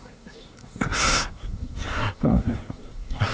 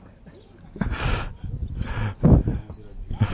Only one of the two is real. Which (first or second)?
second